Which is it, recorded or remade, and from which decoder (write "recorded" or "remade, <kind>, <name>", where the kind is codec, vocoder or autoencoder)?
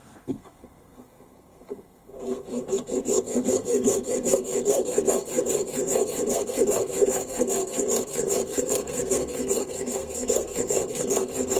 remade, codec, SNAC